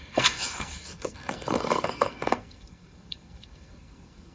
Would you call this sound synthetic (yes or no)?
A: yes